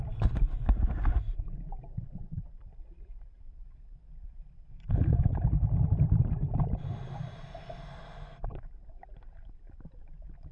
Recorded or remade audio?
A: recorded